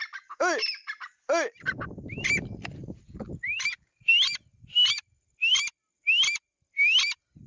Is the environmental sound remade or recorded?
recorded